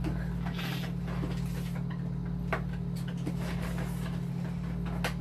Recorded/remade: recorded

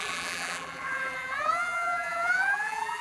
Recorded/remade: remade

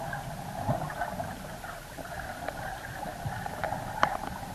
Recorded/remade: recorded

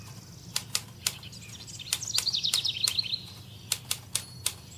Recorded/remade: recorded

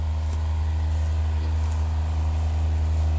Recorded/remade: recorded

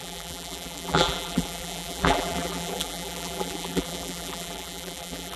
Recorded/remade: remade